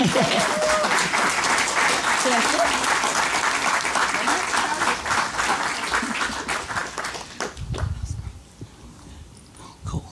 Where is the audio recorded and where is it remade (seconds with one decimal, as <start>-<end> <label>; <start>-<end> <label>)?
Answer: 0.0-3.6 recorded; 3.6-4.4 remade; 4.4-10.1 recorded